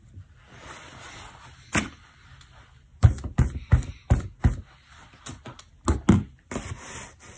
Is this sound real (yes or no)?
yes